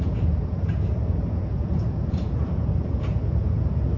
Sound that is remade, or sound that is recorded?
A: remade